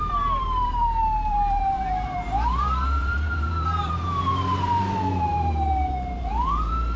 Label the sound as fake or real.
fake